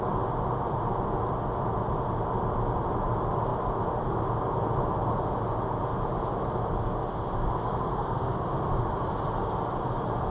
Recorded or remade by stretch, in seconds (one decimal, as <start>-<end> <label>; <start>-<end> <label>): 0.0-7.6 recorded; 7.6-8.3 remade; 8.3-10.3 recorded

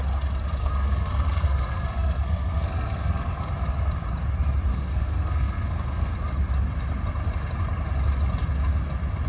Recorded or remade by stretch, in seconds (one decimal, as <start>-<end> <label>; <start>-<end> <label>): 0.0-0.6 recorded; 0.6-3.5 remade; 3.5-4.7 recorded; 4.7-6.1 remade; 6.1-9.3 recorded

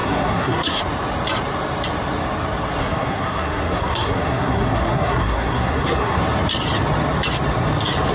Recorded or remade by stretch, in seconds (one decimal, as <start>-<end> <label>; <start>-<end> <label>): 0.0-0.8 remade; 0.8-2.8 recorded; 2.8-6.2 remade; 6.2-8.1 recorded

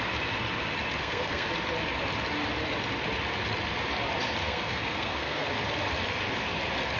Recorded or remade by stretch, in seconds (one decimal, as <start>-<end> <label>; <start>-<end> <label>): 0.0-1.0 recorded; 1.0-1.5 remade; 1.5-4.4 recorded; 4.4-5.5 remade; 5.5-7.0 recorded